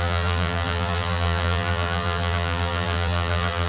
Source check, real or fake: fake